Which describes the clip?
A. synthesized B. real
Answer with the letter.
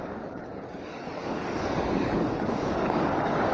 A